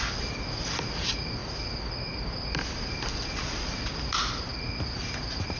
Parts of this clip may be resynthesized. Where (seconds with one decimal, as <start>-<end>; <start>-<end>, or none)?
none